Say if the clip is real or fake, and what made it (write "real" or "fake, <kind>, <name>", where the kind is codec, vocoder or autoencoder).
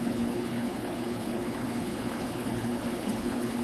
fake, codec, HILCodec